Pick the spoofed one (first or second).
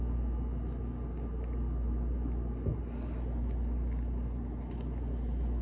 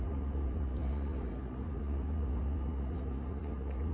second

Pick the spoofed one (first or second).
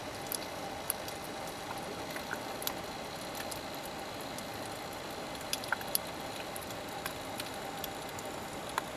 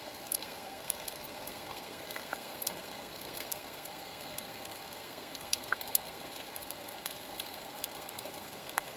second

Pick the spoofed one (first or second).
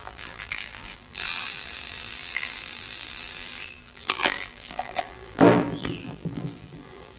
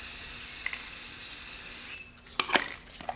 first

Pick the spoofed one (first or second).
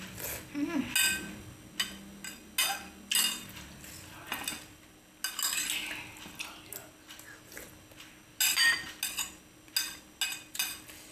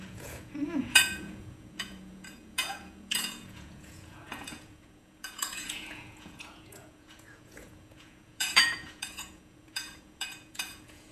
second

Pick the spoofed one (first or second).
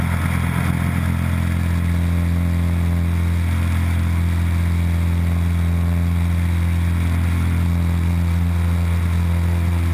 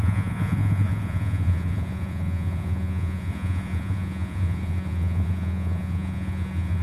second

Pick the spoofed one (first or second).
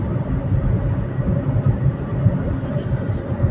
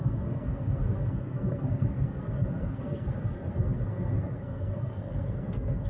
second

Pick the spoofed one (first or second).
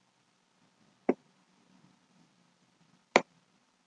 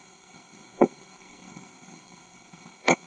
second